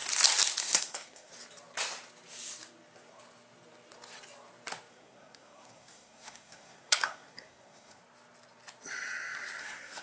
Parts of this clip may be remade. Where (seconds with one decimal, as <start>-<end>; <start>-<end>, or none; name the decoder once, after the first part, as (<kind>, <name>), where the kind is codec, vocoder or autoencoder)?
0.6-1.3 (codec, SNAC); 4.9-8.0; 9.6-10.0